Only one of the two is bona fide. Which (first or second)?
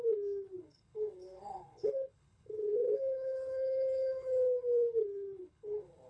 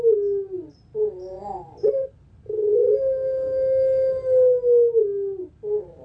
second